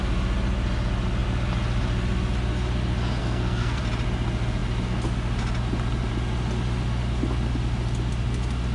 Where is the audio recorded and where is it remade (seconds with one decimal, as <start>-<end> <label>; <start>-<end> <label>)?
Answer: 0.0-3.2 recorded; 3.2-3.8 remade; 3.8-8.7 recorded